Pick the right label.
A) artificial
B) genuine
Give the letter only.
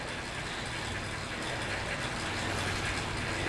B